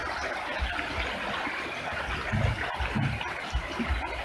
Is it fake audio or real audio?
real